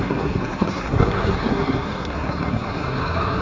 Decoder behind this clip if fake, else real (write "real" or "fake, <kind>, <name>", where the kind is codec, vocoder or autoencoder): fake, codec, SNAC